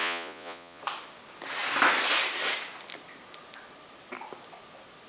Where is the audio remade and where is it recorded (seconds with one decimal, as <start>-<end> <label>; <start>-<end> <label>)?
0.0-0.8 remade; 0.8-5.1 recorded